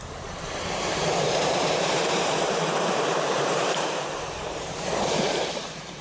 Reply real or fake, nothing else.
fake